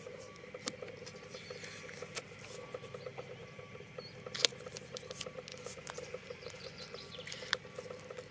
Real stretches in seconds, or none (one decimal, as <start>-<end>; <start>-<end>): 0.0-5.5; 7.2-8.3